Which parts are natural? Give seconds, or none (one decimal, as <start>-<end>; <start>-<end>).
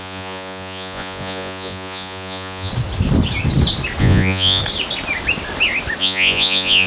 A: 2.7-4.0; 4.6-6.0